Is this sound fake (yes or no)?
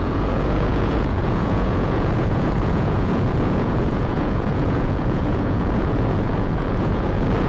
yes